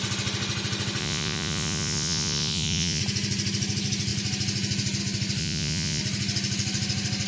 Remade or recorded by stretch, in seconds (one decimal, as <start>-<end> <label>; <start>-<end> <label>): 0.0-1.0 recorded; 1.0-3.0 remade; 3.0-5.4 recorded; 5.4-6.0 remade; 6.0-7.3 recorded